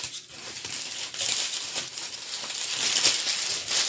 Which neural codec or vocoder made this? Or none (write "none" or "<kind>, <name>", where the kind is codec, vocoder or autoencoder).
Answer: none